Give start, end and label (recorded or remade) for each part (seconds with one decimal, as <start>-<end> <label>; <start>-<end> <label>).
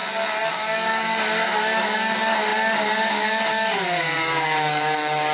0.0-0.5 recorded; 0.5-5.3 remade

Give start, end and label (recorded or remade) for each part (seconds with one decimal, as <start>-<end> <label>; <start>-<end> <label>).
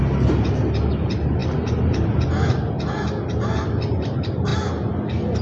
0.0-5.4 recorded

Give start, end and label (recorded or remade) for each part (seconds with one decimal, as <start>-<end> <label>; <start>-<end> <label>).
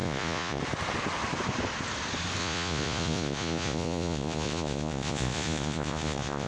0.0-0.6 remade; 0.6-2.4 recorded; 2.4-6.5 remade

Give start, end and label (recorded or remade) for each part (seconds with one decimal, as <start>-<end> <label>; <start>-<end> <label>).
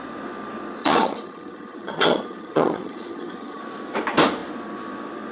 0.0-0.8 recorded; 0.8-3.6 remade; 3.6-5.3 recorded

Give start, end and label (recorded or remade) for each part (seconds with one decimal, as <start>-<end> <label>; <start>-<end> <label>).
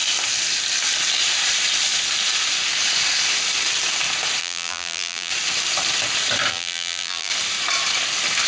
0.0-4.4 recorded; 4.4-5.3 remade; 5.3-6.5 recorded; 6.5-7.3 remade; 7.3-8.5 recorded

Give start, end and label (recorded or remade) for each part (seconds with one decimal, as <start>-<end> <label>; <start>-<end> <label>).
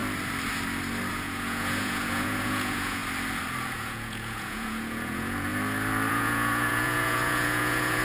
0.0-1.1 recorded; 1.1-3.0 remade; 3.0-3.7 recorded; 3.7-5.5 remade; 5.5-6.1 recorded; 6.1-8.0 remade